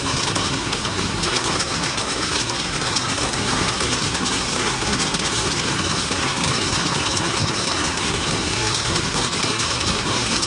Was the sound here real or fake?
fake